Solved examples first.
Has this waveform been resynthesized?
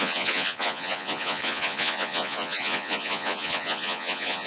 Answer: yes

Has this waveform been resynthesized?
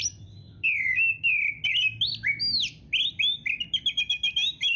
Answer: no